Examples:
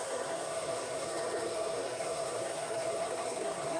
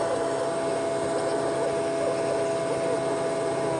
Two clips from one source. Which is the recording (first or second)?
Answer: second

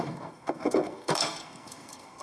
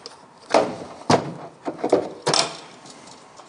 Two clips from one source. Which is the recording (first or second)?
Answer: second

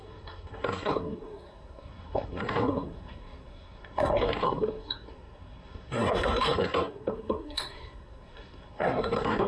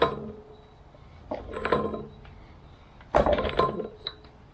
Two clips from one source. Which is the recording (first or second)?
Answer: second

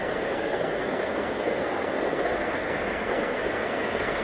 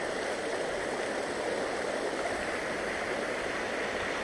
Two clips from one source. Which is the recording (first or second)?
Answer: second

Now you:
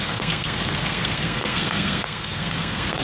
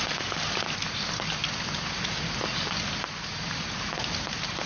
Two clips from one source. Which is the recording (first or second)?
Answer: second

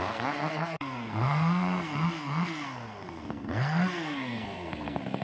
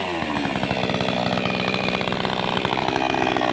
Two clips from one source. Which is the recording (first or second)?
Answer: second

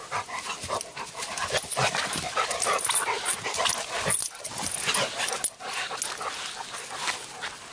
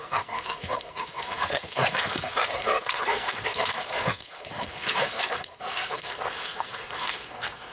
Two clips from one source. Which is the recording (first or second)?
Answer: first